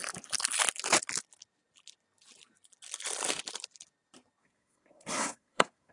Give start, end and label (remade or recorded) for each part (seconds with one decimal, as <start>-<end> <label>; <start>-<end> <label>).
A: 0.0-4.4 recorded; 4.4-5.9 remade